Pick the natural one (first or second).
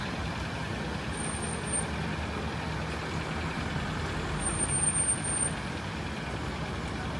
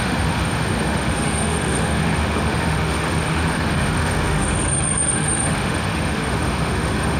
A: first